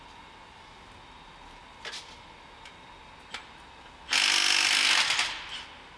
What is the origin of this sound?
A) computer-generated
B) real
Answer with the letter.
B